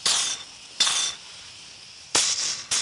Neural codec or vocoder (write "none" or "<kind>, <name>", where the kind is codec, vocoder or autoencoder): none